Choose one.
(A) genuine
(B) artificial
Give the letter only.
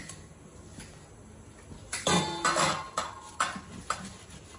A